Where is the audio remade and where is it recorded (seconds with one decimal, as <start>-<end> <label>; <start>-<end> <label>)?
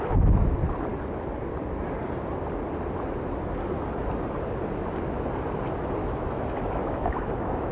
0.0-6.0 recorded; 6.0-7.7 remade